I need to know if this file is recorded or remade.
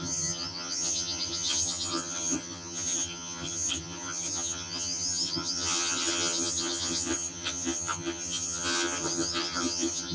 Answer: remade